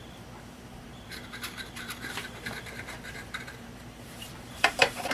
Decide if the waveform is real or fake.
fake